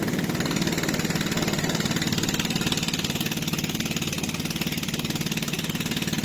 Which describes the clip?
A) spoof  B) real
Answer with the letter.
B